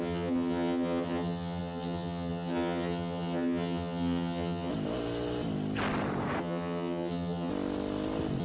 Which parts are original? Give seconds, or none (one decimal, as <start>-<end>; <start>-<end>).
4.7-6.4; 7.5-8.4